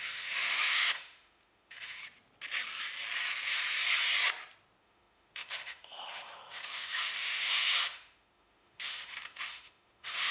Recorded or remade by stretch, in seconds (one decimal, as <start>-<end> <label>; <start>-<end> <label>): 0.0-2.0 remade; 2.0-4.8 recorded; 4.8-10.3 remade